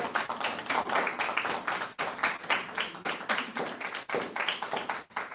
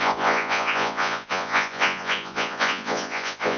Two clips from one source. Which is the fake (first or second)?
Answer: second